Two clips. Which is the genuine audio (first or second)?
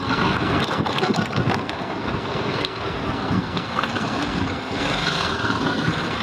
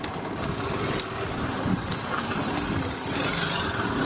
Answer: second